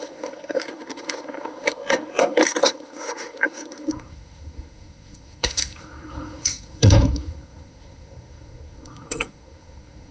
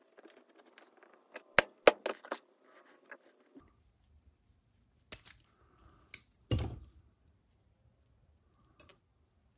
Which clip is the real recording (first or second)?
second